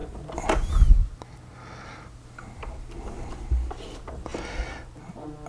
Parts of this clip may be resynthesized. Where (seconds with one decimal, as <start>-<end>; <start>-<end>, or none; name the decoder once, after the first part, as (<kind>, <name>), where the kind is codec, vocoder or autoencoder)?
none